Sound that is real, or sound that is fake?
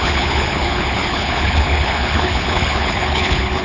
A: fake